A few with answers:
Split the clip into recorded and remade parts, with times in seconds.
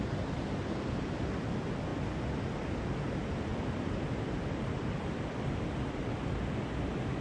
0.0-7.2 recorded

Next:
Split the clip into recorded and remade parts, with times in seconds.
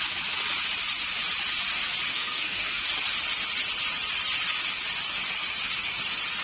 0.0-2.1 recorded; 2.1-2.8 remade; 2.8-6.4 recorded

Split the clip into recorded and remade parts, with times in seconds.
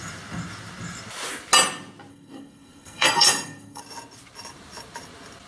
0.0-2.1 recorded; 2.1-3.8 remade; 3.8-5.5 recorded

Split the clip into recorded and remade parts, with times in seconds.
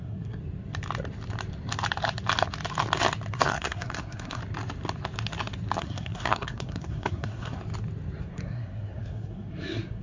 0.0-0.4 remade; 0.4-3.3 recorded; 3.3-4.4 remade; 4.4-5.8 recorded; 5.8-7.6 remade; 7.6-8.2 recorded; 8.2-10.0 remade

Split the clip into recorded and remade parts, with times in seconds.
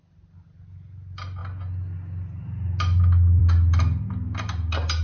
0.0-5.0 recorded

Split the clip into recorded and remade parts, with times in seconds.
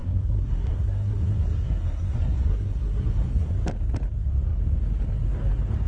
0.0-3.5 remade; 3.5-5.9 recorded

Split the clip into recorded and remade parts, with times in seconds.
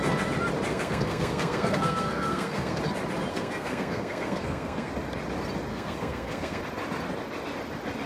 0.0-0.7 recorded; 0.7-2.8 remade; 2.8-3.3 recorded; 3.3-4.9 remade; 4.9-5.7 recorded; 5.7-6.6 remade; 6.6-8.1 recorded